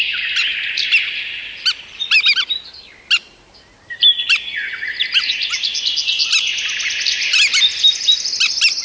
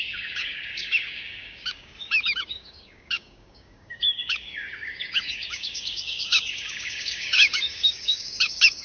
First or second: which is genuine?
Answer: first